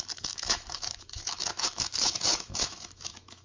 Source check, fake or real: fake